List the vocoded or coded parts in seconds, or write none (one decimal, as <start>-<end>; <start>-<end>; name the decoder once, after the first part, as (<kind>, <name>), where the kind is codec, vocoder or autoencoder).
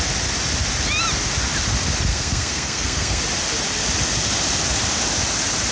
2.1-3.2 (codec, SNAC)